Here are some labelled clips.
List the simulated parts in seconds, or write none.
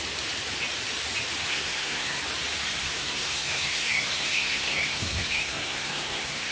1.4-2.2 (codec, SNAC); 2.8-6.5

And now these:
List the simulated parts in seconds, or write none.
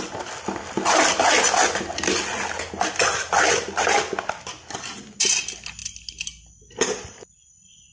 none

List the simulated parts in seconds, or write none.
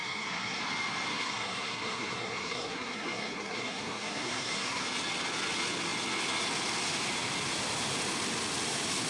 0.0-0.6 (codec, SNAC); 1.1-4.8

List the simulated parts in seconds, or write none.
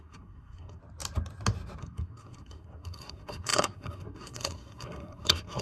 0.0-0.8 (codec, SNAC); 1.8-5.6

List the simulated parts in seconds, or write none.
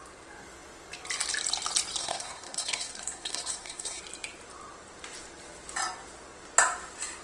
2.0-4.0 (codec, SNAC)